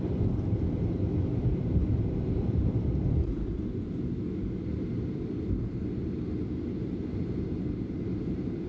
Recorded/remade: remade